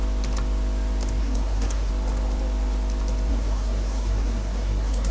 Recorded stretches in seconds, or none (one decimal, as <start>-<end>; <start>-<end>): 0.0-1.2; 1.9-3.3